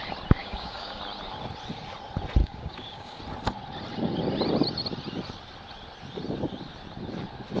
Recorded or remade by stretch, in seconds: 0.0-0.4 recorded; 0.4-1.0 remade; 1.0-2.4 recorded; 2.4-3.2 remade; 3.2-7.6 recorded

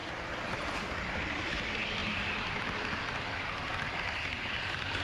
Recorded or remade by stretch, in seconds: 0.0-0.5 recorded; 0.5-2.0 remade; 2.0-5.0 recorded